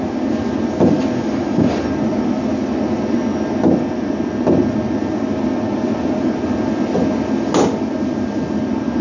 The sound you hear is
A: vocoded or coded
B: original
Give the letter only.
B